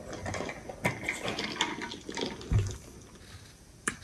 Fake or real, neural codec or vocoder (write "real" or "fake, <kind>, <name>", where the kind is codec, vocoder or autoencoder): real